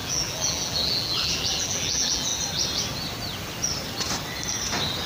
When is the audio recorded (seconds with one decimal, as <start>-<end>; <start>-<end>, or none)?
2.3-5.1